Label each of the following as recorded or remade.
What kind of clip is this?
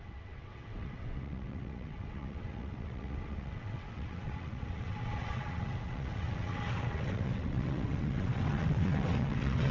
remade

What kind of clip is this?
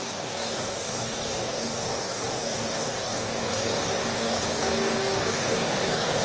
remade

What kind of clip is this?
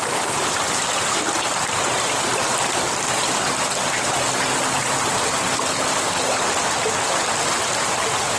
recorded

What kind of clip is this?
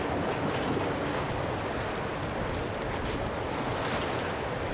recorded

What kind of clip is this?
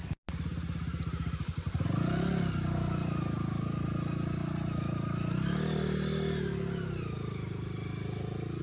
recorded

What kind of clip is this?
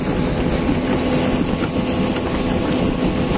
recorded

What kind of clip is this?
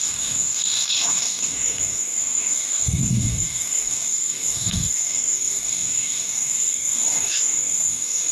remade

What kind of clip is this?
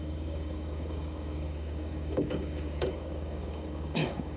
remade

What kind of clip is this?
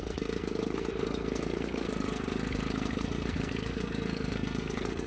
remade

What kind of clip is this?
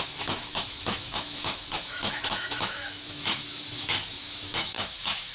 remade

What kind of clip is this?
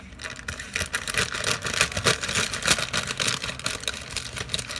recorded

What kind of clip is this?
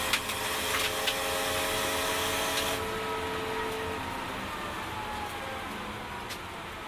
recorded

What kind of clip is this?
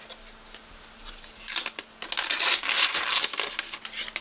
recorded